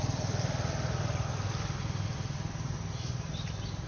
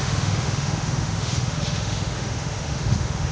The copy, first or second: second